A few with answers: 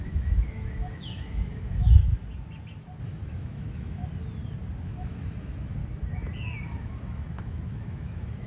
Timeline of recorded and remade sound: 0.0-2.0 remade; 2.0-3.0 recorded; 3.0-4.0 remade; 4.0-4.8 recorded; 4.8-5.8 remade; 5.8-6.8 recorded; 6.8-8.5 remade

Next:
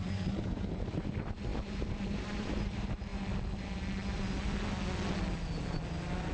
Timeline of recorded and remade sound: 0.0-3.1 remade; 3.1-6.3 recorded